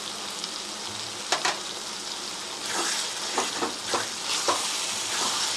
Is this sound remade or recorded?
recorded